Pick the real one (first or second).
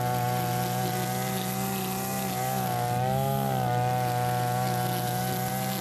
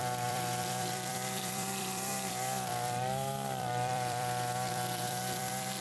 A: first